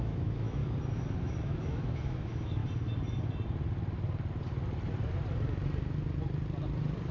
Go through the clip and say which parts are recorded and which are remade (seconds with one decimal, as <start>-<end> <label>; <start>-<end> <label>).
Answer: 0.0-0.6 remade; 0.6-1.2 recorded; 1.2-2.6 remade; 2.6-7.1 recorded